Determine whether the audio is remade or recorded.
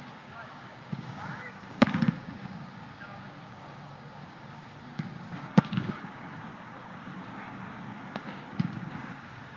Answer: remade